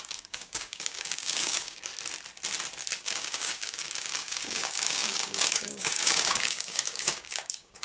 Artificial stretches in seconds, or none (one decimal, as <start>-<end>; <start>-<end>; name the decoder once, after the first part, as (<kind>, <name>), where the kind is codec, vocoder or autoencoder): 0.0-1.9 (codec, DAC); 3.0-7.8

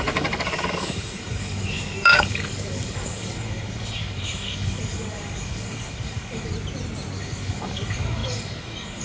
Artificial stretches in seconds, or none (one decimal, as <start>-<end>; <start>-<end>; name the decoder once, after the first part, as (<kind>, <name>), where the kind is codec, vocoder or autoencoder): 0.0-6.5 (codec, DAC); 7.2-9.0

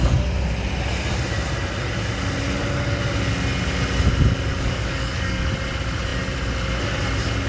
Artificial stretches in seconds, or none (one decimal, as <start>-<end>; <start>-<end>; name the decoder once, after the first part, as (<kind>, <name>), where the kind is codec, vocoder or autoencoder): 4.5-5.5 (codec, DAC)

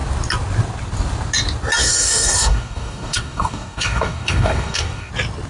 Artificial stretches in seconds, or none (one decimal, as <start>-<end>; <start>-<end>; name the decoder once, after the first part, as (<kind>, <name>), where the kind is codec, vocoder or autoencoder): 1.8-5.1 (codec, DAC)

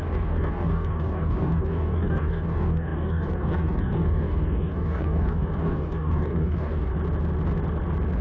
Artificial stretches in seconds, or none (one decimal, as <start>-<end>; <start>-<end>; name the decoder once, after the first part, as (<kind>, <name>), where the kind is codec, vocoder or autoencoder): 0.0-6.9 (codec, DAC)

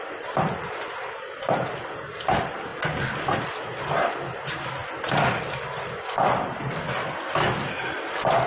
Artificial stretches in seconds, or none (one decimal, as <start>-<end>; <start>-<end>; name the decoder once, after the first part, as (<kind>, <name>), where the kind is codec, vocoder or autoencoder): none

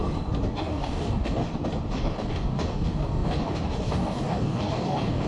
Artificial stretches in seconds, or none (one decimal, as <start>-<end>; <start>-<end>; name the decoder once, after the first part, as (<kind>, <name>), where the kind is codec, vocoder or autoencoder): 0.5-1.4 (codec, DAC); 1.9-5.3